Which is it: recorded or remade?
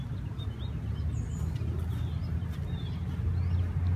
recorded